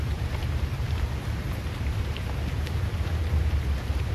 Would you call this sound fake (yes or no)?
yes